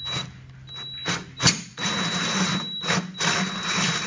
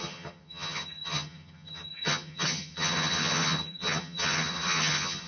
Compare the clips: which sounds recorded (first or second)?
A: first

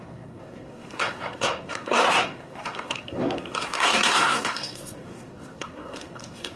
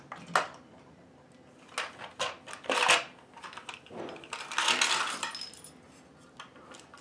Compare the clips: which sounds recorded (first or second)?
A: second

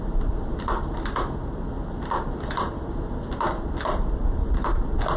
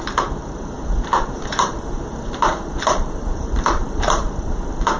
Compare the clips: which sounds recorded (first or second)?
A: first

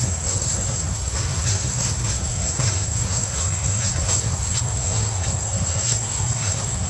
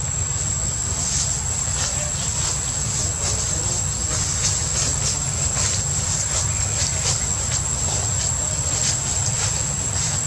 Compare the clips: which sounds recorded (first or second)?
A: second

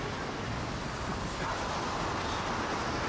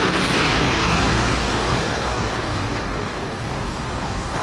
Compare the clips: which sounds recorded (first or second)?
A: first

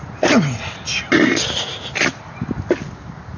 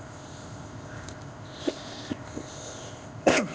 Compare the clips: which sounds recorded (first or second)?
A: first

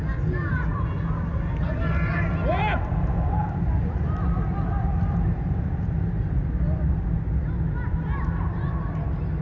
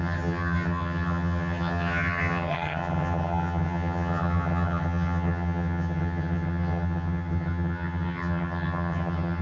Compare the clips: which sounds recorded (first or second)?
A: first